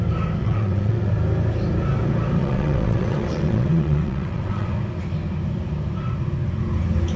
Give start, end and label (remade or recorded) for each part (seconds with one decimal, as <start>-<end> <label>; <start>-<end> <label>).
0.0-0.4 recorded; 0.4-1.1 remade; 1.1-2.4 recorded; 2.4-4.7 remade; 4.7-7.2 recorded

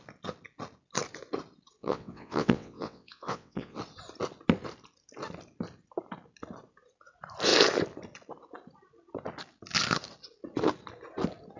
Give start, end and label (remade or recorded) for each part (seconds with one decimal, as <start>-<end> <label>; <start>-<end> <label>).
0.0-1.8 recorded; 1.8-3.8 remade; 3.8-11.6 recorded

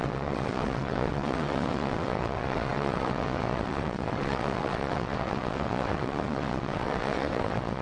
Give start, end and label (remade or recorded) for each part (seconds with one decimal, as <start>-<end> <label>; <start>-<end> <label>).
0.0-7.8 remade

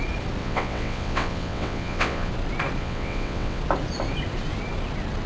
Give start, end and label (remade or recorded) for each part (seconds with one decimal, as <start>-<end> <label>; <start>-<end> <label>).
0.0-0.4 recorded; 0.4-2.3 remade; 2.3-2.8 recorded; 2.8-3.6 remade; 3.6-5.3 recorded

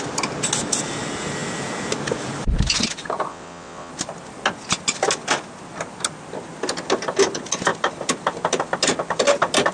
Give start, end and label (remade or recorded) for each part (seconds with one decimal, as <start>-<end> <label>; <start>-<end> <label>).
0.0-3.3 recorded; 3.3-3.9 remade; 3.9-9.7 recorded

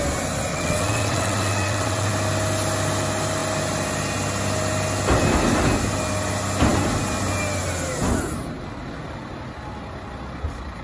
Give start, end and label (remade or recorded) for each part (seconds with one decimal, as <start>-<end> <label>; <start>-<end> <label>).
0.0-0.5 recorded; 0.5-2.1 remade; 2.1-10.8 recorded

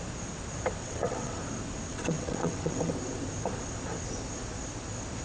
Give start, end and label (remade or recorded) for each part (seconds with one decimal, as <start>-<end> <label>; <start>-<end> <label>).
0.0-0.8 recorded; 0.8-1.4 remade; 1.4-1.9 recorded; 1.9-2.9 remade; 2.9-5.2 recorded

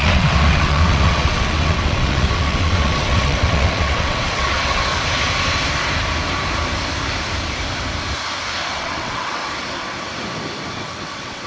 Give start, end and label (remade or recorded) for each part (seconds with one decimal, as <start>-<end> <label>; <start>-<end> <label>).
0.0-4.9 remade; 4.9-8.7 recorded; 8.7-9.4 remade; 9.4-10.7 recorded; 10.7-11.5 remade